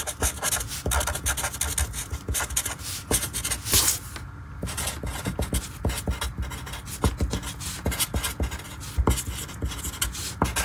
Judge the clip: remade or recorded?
recorded